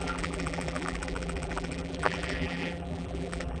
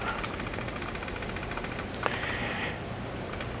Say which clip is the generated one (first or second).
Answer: first